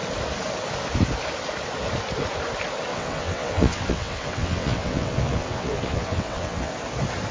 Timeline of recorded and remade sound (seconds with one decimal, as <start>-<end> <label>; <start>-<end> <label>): 0.0-2.9 recorded; 2.9-6.7 remade; 6.7-7.3 recorded